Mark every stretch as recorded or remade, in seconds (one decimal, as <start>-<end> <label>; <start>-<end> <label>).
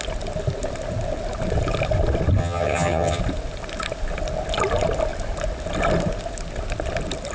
0.0-2.4 recorded; 2.4-3.2 remade; 3.2-7.3 recorded